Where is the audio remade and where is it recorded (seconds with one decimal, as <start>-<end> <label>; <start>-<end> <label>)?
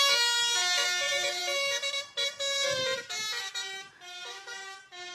0.0-5.1 recorded